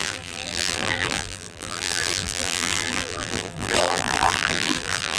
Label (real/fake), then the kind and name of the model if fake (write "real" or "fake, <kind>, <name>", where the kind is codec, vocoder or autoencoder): fake, vocoder, BigVGAN v2